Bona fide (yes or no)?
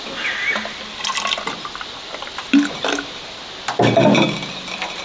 yes